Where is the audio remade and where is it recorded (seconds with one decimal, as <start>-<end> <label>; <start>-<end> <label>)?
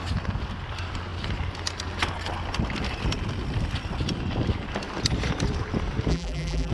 0.0-6.1 recorded; 6.1-6.7 remade